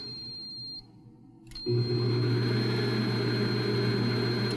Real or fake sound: real